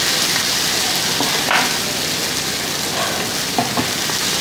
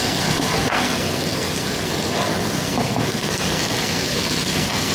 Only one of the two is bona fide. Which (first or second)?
first